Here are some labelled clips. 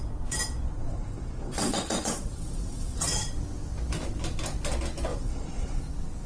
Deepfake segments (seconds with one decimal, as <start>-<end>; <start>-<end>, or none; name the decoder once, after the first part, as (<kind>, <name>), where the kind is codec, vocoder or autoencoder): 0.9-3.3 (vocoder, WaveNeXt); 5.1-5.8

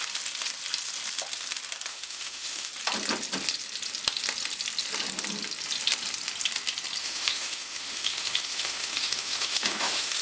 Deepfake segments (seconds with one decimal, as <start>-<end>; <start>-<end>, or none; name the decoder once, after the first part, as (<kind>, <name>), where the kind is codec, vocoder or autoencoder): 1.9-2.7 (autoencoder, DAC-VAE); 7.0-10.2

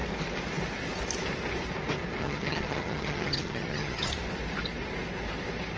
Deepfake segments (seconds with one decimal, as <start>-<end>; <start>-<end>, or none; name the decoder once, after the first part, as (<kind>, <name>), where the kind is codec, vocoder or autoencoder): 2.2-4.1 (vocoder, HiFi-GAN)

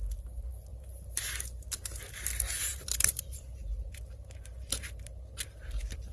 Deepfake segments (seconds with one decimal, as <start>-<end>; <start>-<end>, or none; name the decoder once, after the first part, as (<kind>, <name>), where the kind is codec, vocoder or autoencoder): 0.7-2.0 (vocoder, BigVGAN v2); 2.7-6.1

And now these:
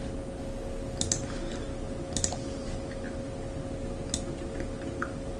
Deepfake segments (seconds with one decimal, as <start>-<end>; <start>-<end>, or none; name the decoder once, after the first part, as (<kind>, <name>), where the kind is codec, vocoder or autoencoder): none